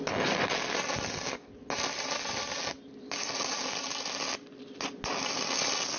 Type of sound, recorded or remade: recorded